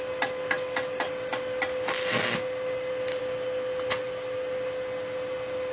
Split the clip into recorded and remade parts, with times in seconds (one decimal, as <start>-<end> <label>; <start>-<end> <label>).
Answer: 0.0-5.7 recorded